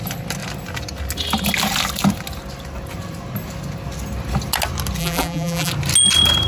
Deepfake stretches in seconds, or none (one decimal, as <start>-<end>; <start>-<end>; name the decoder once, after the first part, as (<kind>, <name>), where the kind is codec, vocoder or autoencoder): 5.0-5.7 (vocoder, BigVGAN v2)